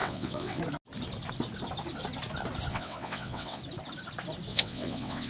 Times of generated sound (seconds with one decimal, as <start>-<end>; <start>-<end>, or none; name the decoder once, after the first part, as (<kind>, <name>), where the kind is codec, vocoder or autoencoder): 0.0-0.6 (vocoder, WaveNeXt); 2.7-3.6; 4.5-5.3